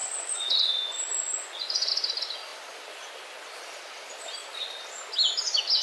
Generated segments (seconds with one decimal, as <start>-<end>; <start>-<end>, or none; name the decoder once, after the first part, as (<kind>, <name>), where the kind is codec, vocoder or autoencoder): 0.0-1.9 (vocoder, Vocos)